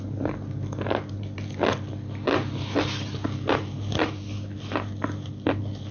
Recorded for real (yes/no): yes